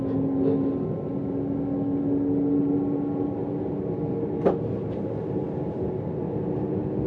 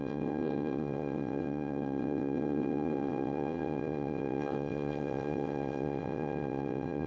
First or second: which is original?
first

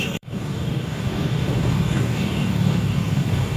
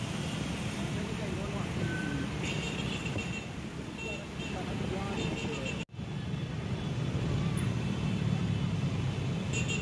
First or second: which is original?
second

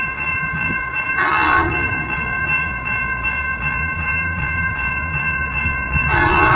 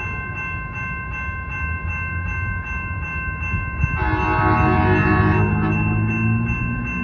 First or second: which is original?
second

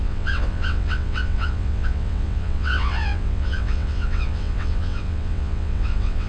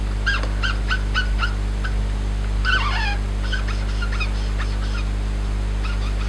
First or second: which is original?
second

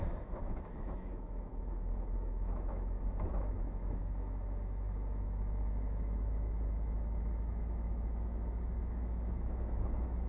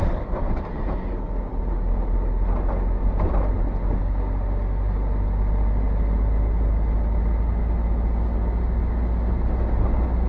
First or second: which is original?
second